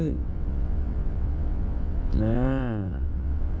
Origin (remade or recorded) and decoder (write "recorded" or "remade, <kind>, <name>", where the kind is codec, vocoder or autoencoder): remade, vocoder, WaveNeXt